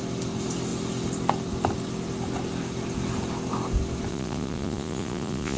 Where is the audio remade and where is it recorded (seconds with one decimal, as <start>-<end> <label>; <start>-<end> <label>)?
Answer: 0.0-4.1 recorded; 4.1-5.6 remade

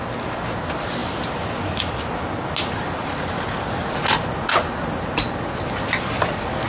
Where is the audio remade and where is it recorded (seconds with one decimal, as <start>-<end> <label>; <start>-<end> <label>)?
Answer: 0.0-6.7 recorded